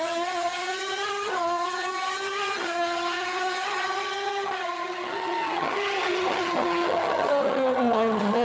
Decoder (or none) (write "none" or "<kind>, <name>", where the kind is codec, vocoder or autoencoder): vocoder, HiFi-GAN